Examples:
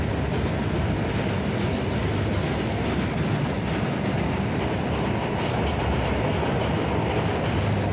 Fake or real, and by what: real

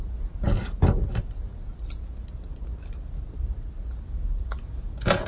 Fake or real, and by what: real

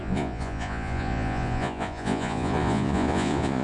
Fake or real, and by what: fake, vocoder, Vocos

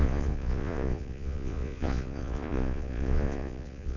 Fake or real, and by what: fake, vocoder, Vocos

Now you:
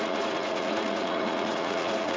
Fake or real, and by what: fake, vocoder, Vocos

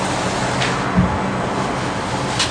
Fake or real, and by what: real